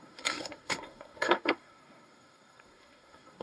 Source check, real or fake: fake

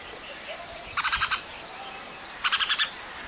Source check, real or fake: fake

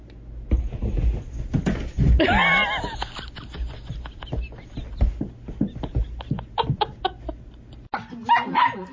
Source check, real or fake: real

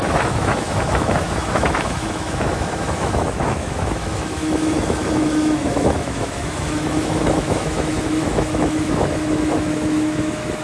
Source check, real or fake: fake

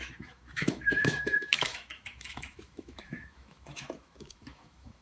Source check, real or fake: fake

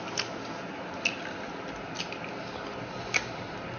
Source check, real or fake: real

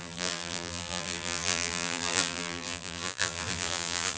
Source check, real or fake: fake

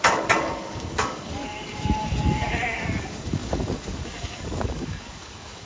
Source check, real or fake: fake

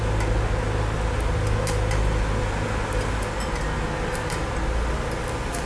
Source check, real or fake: real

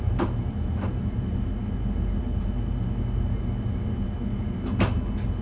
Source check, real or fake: real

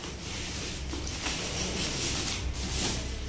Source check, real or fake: real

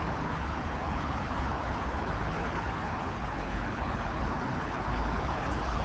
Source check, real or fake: fake